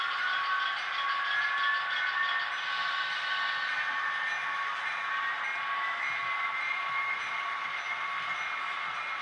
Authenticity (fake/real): fake